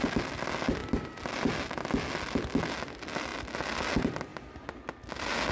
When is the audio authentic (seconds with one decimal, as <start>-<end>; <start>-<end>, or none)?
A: 0.0-5.5